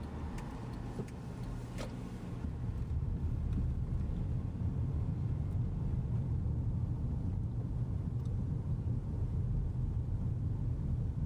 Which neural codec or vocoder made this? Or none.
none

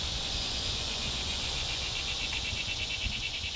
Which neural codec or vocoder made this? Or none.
vocoder, Vocos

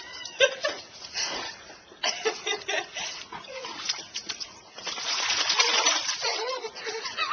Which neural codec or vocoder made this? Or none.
vocoder, Vocos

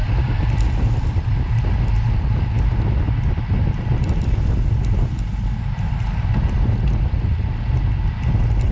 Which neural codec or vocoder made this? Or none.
none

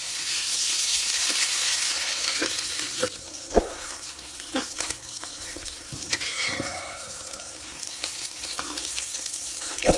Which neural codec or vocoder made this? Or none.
codec, SNAC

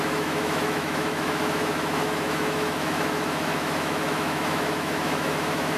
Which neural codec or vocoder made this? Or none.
autoencoder, DAC-VAE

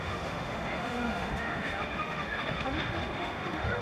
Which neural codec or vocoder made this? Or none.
autoencoder, DAC-VAE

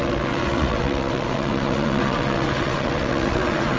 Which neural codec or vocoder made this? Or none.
vocoder, WaveNeXt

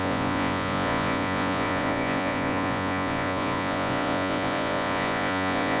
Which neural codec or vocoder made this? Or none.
vocoder, Vocos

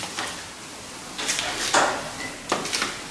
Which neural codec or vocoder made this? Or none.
none